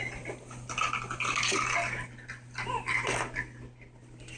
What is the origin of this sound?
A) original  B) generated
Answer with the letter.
A